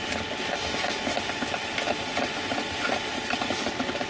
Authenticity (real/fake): real